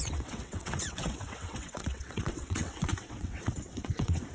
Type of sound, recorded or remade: remade